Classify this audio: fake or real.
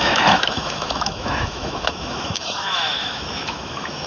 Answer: fake